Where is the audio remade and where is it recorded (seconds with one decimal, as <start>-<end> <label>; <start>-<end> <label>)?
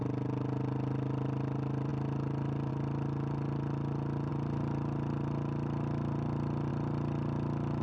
0.0-7.8 recorded